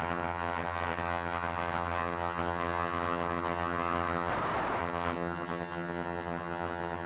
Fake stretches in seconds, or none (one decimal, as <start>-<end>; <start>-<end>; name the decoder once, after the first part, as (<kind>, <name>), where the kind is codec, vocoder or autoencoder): 0.0-4.3 (vocoder, HiFi-GAN); 4.8-7.1